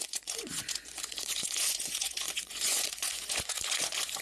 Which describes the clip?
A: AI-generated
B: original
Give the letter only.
A